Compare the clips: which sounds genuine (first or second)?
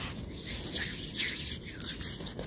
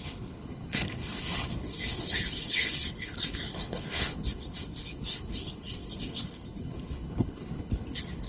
first